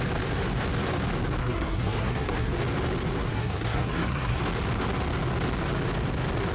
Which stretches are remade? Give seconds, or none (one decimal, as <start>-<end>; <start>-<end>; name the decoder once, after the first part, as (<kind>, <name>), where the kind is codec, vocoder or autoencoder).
1.4-2.5 (codec, SNAC); 3.3-4.4